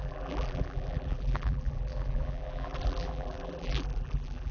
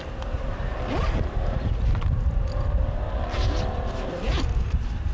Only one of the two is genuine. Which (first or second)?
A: second